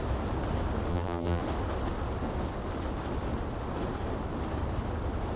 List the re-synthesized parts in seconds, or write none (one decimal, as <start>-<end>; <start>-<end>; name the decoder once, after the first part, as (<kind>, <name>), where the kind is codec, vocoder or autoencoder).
0.9-1.4 (vocoder, BigVGAN v2)